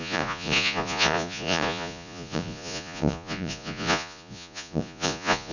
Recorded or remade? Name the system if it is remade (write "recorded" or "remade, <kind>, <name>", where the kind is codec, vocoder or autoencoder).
remade, vocoder, Vocos